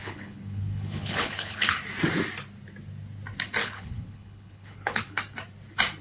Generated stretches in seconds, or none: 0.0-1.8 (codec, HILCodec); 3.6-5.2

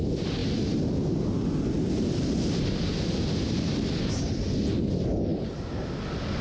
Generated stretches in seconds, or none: none